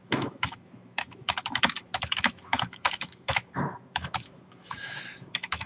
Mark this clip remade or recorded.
remade